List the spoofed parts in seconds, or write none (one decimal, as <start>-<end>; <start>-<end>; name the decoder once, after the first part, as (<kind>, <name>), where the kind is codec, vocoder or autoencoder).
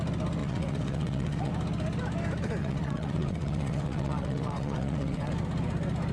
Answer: 0.4-1.5 (vocoder, WaveNeXt); 2.6-5.3